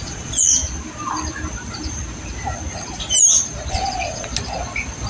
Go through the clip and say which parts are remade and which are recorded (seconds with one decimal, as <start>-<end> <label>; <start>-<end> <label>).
0.0-0.6 remade; 0.6-3.7 recorded; 3.7-4.3 remade; 4.3-5.1 recorded